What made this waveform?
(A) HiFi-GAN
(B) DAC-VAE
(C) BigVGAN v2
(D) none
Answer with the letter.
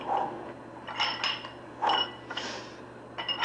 D